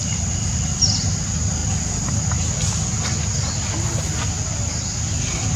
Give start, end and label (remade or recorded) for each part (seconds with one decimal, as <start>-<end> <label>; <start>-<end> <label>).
0.0-5.6 recorded

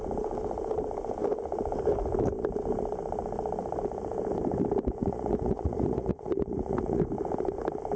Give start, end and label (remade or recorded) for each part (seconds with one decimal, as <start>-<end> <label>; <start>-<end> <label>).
0.0-5.0 recorded; 5.0-7.0 remade; 7.0-8.0 recorded

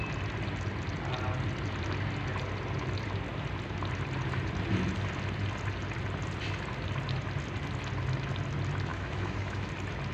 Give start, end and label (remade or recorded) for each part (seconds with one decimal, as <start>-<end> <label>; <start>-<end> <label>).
0.0-8.9 recorded; 8.9-9.7 remade; 9.7-10.1 recorded

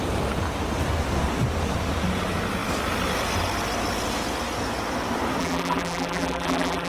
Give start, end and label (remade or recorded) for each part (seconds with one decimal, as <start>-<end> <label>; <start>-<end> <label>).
0.0-5.4 recorded; 5.4-6.9 remade

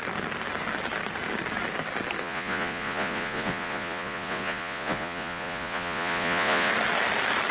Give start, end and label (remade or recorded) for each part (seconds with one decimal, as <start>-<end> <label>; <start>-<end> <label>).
0.0-2.2 recorded; 2.2-6.7 remade; 6.7-7.5 recorded

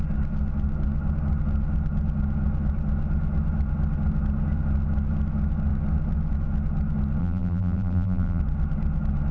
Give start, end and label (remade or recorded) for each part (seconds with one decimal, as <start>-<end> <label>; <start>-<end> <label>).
0.0-7.2 recorded; 7.2-8.4 remade; 8.4-9.3 recorded

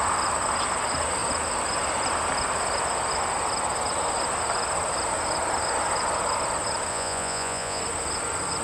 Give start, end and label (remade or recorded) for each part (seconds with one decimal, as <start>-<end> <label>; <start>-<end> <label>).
0.0-6.9 recorded; 6.9-7.8 remade; 7.8-8.6 recorded

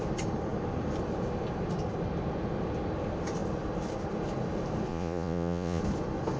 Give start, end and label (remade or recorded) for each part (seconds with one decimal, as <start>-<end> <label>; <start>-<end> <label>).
0.0-4.9 recorded; 4.9-5.8 remade; 5.8-6.4 recorded